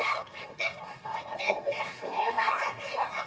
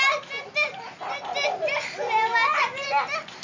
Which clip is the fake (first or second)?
first